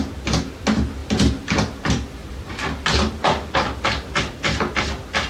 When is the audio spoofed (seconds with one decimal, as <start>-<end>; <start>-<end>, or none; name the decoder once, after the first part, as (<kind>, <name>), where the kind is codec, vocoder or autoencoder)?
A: 1.0-4.2 (vocoder, BigVGAN v2)